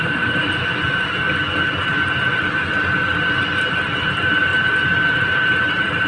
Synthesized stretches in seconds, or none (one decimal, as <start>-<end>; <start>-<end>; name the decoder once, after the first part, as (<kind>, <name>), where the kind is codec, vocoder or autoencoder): 0.0-0.4 (vocoder, BigVGAN v2); 4.1-4.5; 5.1-6.1